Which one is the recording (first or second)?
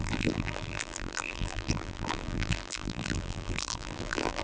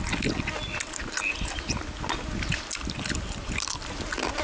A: second